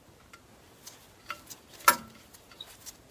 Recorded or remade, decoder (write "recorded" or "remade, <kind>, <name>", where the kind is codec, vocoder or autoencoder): recorded